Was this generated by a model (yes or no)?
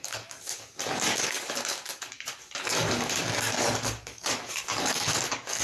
yes